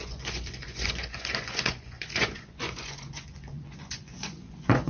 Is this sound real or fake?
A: fake